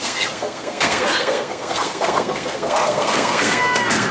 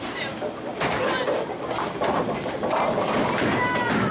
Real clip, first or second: second